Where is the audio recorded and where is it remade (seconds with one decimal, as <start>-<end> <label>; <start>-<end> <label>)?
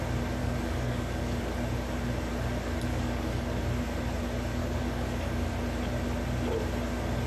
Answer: 0.0-0.4 recorded; 0.4-1.4 remade; 1.4-2.9 recorded; 2.9-3.6 remade; 3.6-4.6 recorded; 4.6-5.5 remade; 5.5-7.3 recorded